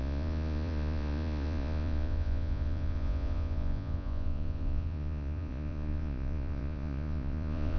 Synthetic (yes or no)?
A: yes